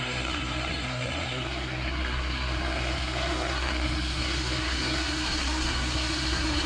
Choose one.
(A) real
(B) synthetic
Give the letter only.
B